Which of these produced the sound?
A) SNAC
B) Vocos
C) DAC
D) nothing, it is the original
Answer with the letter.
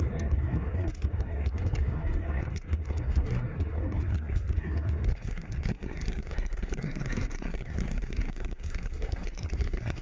A